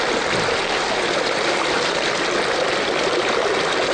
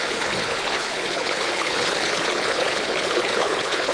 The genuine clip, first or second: first